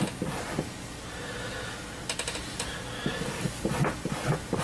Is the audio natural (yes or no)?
yes